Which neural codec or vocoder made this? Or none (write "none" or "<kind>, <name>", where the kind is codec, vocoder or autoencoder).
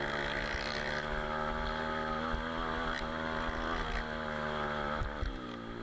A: none